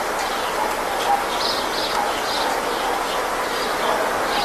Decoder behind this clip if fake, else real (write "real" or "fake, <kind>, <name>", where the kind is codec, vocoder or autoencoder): real